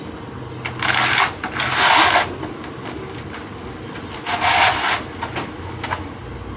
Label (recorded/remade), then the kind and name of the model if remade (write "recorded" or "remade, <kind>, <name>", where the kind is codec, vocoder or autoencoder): recorded